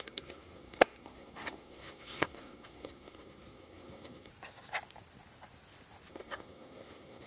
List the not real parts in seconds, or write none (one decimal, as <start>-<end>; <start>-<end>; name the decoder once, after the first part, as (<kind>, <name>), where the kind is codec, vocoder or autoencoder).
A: 0.0-4.3 (codec, SNAC); 6.1-7.3